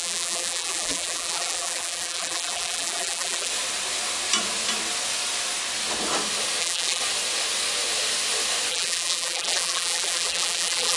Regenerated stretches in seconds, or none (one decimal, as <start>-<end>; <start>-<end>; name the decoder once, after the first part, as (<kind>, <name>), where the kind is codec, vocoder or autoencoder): 0.0-3.5 (vocoder, BigVGAN v2); 6.6-7.0; 8.7-11.0